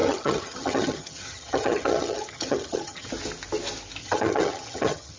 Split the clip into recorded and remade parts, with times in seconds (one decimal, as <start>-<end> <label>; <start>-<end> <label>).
0.0-3.1 remade; 3.1-4.0 recorded; 4.0-5.2 remade